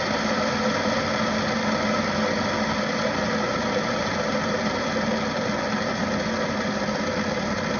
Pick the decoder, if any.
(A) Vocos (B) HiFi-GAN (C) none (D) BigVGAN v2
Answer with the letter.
C